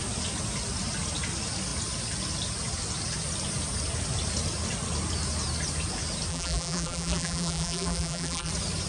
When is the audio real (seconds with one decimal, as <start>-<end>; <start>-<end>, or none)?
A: 0.0-6.3; 8.5-8.9